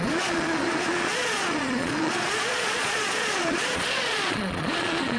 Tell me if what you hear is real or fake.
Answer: fake